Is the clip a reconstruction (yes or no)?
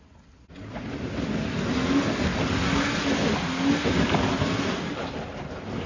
no